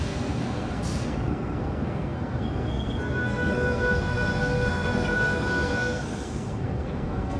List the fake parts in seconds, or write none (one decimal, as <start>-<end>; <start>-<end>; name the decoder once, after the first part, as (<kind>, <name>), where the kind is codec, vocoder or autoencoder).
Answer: 0.0-7.4 (codec, SNAC)